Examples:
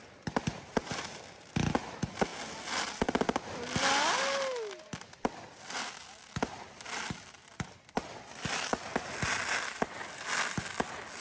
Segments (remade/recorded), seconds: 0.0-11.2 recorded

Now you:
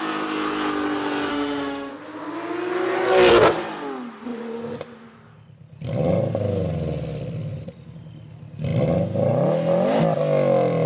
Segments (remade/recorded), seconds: 0.0-1.3 recorded; 1.3-1.9 remade; 1.9-10.9 recorded

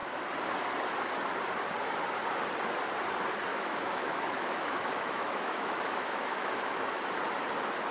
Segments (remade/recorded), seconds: 0.0-3.5 recorded; 3.5-7.0 remade; 7.0-7.9 recorded

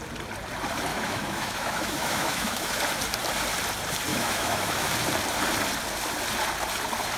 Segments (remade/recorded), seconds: 0.0-0.9 recorded; 0.9-2.8 remade; 2.8-4.1 recorded; 4.1-4.9 remade; 4.9-7.2 recorded

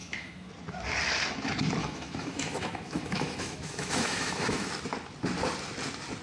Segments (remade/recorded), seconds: 0.0-0.5 remade; 0.5-1.8 recorded; 1.8-4.7 remade; 4.7-6.2 recorded